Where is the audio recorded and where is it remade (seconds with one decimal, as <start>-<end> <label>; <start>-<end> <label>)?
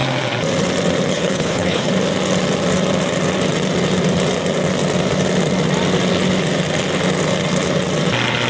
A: 0.0-1.1 recorded; 1.1-1.9 remade; 1.9-8.5 recorded